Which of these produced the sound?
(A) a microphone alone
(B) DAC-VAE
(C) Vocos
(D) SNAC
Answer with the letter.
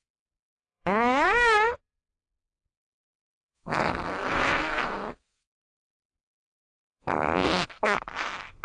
D